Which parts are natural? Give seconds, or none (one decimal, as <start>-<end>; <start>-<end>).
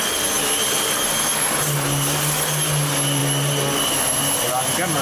0.0-5.0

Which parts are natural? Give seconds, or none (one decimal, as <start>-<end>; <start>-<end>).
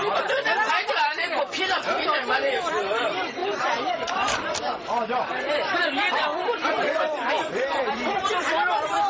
0.0-2.4; 3.4-3.9; 6.3-6.9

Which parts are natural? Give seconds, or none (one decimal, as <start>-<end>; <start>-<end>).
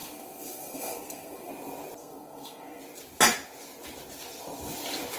1.5-2.0; 2.8-5.2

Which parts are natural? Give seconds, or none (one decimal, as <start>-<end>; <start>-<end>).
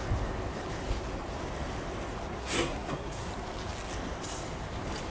0.0-2.4; 3.3-5.1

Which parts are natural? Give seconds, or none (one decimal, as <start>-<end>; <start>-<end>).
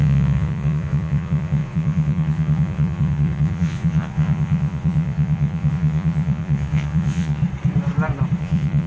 7.4-8.4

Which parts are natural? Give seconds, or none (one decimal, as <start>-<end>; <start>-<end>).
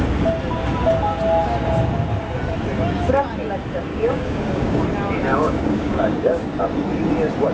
0.0-3.9; 4.8-5.3; 6.6-7.5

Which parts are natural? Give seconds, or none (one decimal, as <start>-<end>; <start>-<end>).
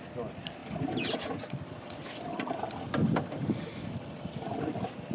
0.0-5.1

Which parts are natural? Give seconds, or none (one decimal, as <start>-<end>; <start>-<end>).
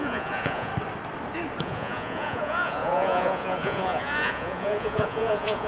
0.7-1.6